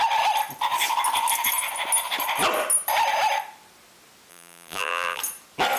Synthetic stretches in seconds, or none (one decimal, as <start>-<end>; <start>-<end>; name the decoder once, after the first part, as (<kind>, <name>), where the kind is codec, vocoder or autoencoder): 4.3-5.2 (vocoder, BigVGAN v2)